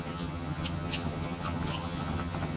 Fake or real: fake